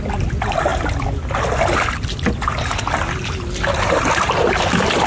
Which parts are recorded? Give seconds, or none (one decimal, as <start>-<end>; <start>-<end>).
0.0-5.1